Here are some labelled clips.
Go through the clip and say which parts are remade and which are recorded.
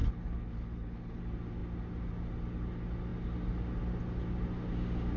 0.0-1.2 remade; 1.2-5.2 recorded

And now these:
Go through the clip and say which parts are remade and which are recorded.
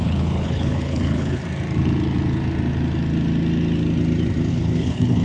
0.0-1.4 remade; 1.4-4.5 recorded; 4.5-5.2 remade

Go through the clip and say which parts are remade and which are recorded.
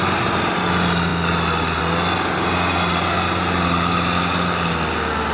0.0-5.3 recorded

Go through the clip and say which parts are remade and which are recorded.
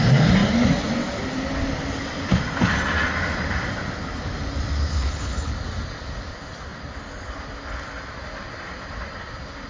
0.0-4.9 recorded; 4.9-5.5 remade; 5.5-9.7 recorded